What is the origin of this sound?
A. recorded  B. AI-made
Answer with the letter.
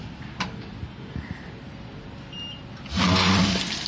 A